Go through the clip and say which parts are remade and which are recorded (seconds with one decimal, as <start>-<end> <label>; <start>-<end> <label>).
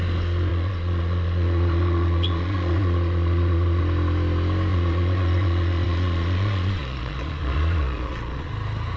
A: 0.0-0.5 recorded; 0.5-3.8 remade; 3.8-4.7 recorded; 4.7-8.5 remade; 8.5-9.0 recorded